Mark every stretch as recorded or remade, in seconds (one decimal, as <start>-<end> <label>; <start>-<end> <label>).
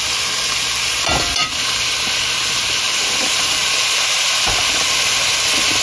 0.0-5.8 recorded